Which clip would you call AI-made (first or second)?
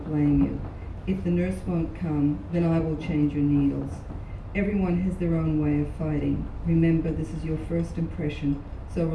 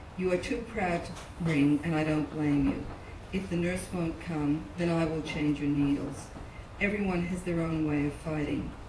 second